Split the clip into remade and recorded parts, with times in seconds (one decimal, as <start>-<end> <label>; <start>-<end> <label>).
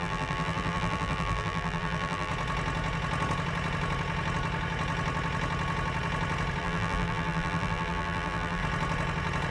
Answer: 0.0-2.3 remade; 2.3-6.6 recorded; 6.6-8.6 remade; 8.6-9.5 recorded